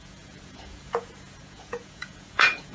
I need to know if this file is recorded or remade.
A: remade